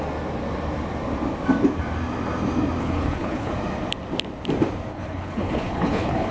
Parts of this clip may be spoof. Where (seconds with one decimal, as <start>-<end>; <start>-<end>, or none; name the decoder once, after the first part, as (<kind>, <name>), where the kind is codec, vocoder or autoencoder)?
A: 2.8-3.5 (codec, HILCodec); 4.9-6.3